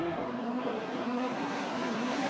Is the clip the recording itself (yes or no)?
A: no